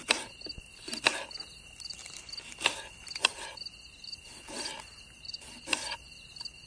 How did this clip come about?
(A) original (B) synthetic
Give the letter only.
A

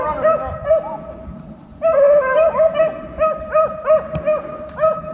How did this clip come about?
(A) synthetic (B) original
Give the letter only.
B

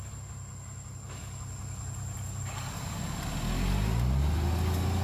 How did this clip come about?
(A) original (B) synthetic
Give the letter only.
A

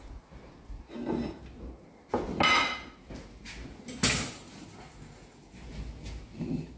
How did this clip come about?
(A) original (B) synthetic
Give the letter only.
A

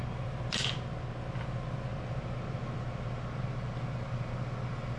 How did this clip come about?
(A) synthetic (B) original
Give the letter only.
B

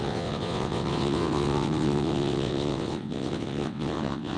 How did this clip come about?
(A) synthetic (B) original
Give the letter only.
A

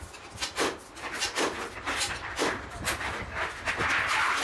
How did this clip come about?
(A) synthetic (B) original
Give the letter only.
B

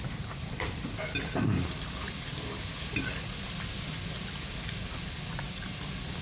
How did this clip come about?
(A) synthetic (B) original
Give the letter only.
A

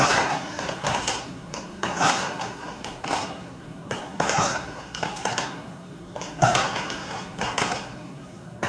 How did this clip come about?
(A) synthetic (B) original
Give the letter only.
A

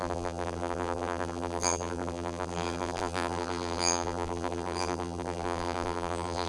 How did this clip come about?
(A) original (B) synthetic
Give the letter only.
B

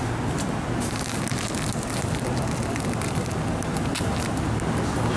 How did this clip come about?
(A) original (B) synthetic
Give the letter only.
A